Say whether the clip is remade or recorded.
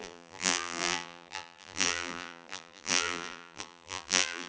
remade